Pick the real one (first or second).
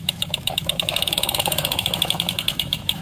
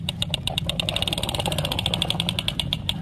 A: second